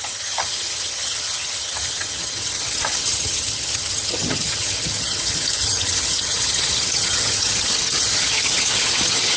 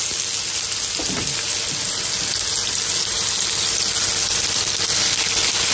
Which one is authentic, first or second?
second